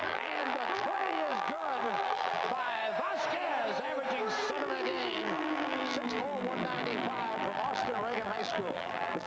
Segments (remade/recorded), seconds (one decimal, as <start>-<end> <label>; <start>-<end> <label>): 0.0-2.8 remade; 2.8-4.5 recorded; 4.5-9.3 remade